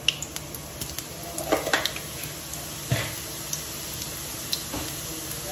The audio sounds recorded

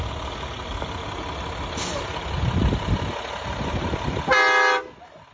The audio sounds recorded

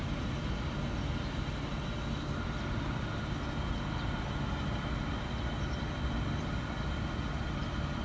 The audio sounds recorded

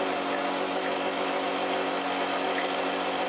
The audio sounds recorded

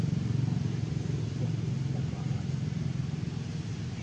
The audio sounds recorded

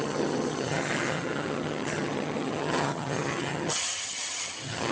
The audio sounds remade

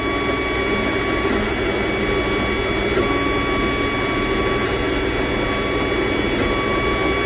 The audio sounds recorded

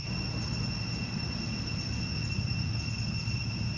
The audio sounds recorded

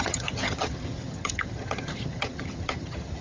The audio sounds remade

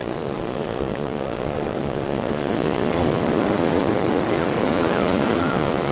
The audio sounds remade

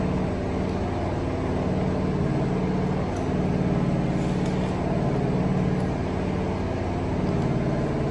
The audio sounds recorded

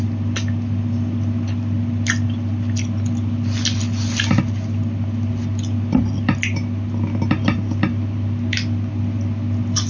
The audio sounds recorded